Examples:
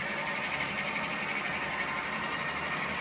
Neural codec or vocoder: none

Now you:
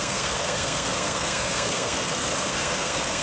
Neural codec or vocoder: codec, SNAC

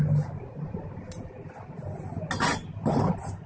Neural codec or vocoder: none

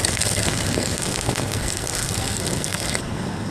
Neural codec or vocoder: codec, SNAC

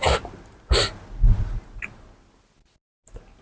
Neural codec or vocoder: none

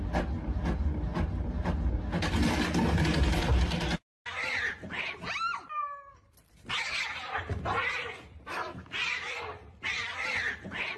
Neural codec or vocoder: none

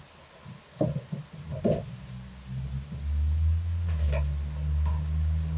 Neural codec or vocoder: none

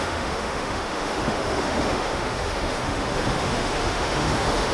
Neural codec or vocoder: autoencoder, DAC-VAE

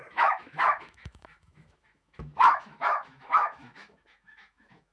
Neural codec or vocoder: autoencoder, DAC-VAE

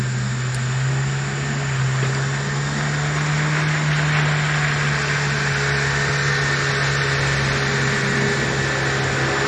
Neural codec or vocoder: none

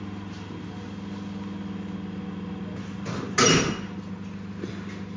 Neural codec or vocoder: none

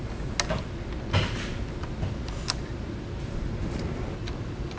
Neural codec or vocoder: none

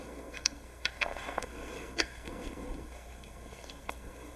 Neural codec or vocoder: codec, SNAC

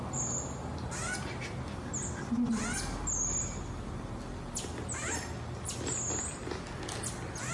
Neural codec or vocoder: none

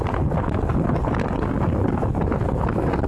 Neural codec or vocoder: none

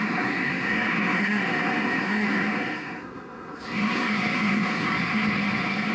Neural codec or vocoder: codec, SNAC